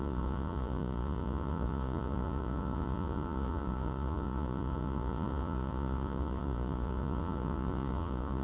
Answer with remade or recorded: remade